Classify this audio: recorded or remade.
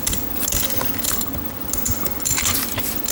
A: remade